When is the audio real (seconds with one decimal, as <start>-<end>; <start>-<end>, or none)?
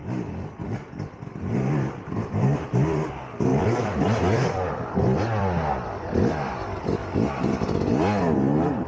3.1-3.5; 7.9-8.9